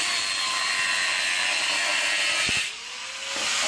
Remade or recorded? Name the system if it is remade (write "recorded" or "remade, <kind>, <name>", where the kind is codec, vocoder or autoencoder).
recorded